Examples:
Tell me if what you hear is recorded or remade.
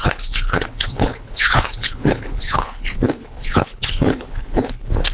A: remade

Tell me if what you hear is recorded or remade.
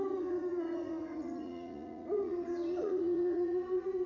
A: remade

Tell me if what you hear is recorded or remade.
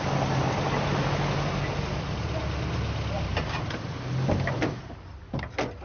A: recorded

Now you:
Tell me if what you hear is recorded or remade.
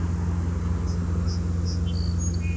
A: recorded